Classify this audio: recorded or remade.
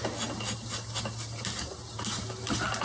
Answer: recorded